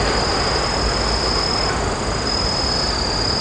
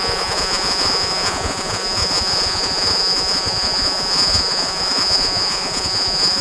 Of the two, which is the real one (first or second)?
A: first